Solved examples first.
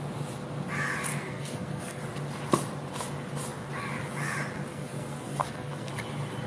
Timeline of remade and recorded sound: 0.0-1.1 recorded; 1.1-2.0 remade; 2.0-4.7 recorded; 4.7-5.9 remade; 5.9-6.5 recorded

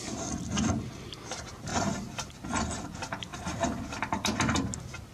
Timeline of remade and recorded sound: 0.0-1.7 recorded; 1.7-2.3 remade; 2.3-3.3 recorded; 3.3-3.8 remade; 3.8-5.1 recorded

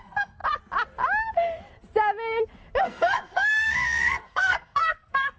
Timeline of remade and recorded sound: 0.0-0.4 remade; 0.4-2.8 recorded; 2.8-5.4 remade

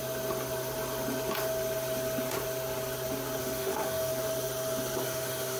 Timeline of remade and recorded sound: 0.0-3.4 recorded; 3.4-4.1 remade; 4.1-5.0 recorded; 5.0-5.6 remade

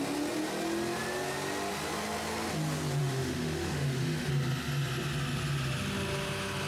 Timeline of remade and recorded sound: 0.0-3.0 recorded; 3.0-4.3 remade; 4.3-6.7 recorded

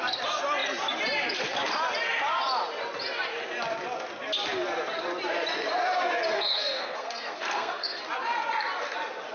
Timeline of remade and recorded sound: 0.0-6.3 recorded; 6.3-8.0 remade; 8.0-9.3 recorded

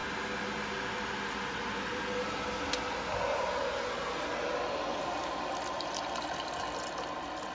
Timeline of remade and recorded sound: 0.0-7.5 recorded